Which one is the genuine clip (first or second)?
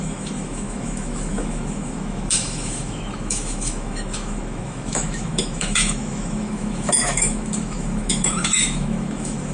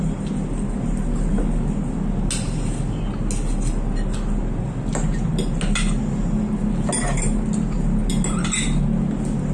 second